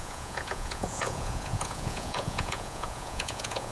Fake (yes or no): yes